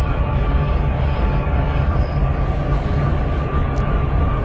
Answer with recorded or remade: remade